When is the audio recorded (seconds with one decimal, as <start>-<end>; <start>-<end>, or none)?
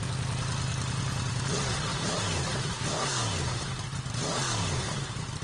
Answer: 0.0-1.9